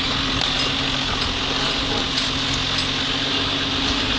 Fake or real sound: real